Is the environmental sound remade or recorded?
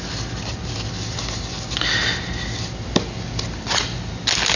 recorded